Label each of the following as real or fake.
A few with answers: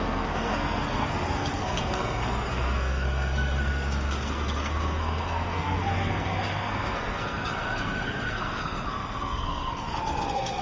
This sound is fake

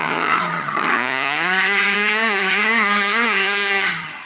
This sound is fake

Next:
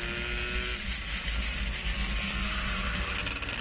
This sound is real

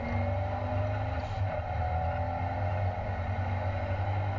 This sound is real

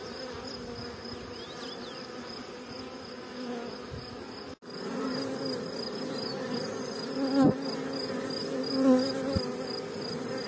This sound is real